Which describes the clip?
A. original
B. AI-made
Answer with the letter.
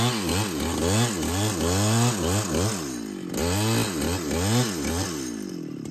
A